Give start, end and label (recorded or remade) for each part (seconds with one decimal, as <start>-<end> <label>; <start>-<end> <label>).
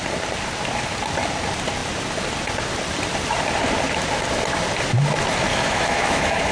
0.0-5.5 recorded; 5.5-6.5 remade